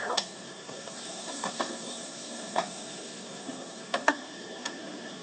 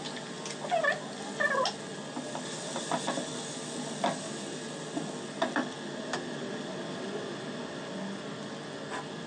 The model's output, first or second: first